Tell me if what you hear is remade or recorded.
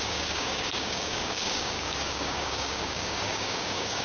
remade